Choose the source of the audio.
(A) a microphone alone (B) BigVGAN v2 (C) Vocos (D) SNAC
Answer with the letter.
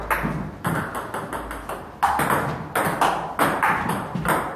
A